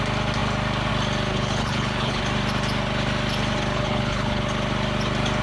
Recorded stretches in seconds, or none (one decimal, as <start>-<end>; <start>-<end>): 0.0-1.3; 2.2-3.7; 4.4-5.4